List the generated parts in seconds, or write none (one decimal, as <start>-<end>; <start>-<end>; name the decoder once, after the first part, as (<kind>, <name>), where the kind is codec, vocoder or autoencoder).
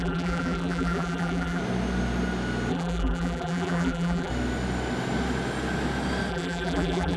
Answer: 0.0-1.6 (vocoder, BigVGAN v2); 2.7-4.3; 6.3-7.2